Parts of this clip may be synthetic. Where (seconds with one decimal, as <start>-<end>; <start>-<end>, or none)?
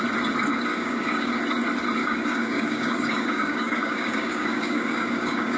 0.7-1.4; 2.0-5.6